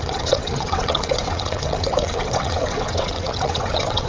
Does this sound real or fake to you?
fake